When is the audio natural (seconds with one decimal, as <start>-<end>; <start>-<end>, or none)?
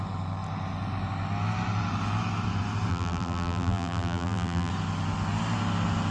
0.0-2.9; 4.7-6.1